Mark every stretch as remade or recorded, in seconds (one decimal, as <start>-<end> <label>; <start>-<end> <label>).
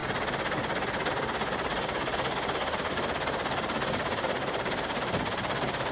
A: 0.0-1.1 recorded; 1.1-5.9 remade